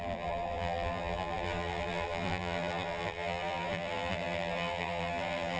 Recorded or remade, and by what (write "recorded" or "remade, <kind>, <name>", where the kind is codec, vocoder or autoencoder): remade, vocoder, BigVGAN v2